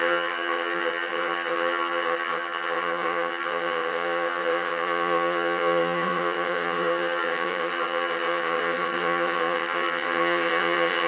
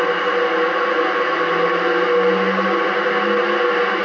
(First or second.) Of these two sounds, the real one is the second